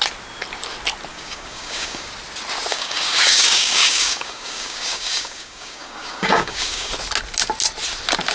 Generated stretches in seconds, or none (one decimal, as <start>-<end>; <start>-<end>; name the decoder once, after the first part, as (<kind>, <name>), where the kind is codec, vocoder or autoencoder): 1.1-2.1 (codec, DAC); 2.7-6.9

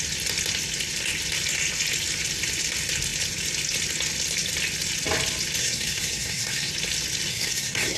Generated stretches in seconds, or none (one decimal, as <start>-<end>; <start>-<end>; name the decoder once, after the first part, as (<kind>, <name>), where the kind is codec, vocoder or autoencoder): 5.6-6.7 (codec, SNAC); 7.3-8.0

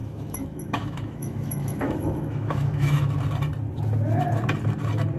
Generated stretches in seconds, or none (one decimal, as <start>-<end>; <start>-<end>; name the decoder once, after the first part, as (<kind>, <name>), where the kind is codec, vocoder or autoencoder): 0.0-3.1 (autoencoder, DAC-VAE)